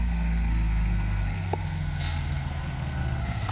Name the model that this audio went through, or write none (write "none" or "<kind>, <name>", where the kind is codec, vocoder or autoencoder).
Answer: codec, SNAC